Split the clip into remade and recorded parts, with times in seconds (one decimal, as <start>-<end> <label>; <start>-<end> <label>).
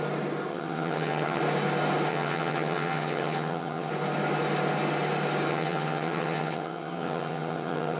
0.0-0.5 recorded; 0.5-1.4 remade; 1.4-2.1 recorded; 2.1-3.9 remade; 3.9-5.5 recorded; 5.5-8.0 remade